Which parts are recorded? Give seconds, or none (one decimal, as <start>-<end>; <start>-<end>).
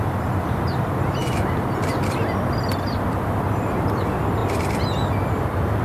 4.4-5.2